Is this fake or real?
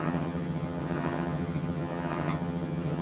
fake